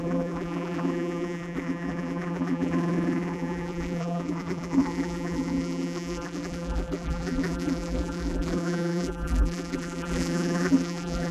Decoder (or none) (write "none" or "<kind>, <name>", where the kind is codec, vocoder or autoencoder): vocoder, BigVGAN v2